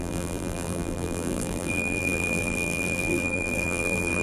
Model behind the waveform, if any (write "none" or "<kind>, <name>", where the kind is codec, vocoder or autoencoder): vocoder, BigVGAN v2